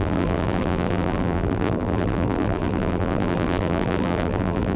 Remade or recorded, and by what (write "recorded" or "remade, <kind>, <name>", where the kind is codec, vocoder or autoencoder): remade, vocoder, BigVGAN v2